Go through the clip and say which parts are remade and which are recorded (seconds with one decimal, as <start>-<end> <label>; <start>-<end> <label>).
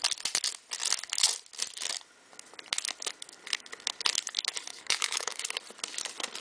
0.0-4.7 recorded; 4.7-5.4 remade; 5.4-6.4 recorded